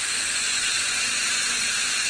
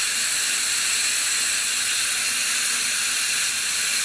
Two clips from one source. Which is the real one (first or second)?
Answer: second